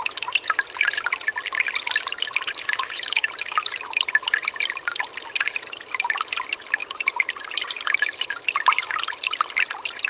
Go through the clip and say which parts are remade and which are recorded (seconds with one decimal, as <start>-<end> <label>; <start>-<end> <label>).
0.0-6.8 recorded; 6.8-9.4 remade; 9.4-10.1 recorded